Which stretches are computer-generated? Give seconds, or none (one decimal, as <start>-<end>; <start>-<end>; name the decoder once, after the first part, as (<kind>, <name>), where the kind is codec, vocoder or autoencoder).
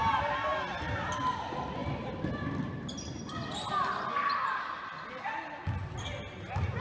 none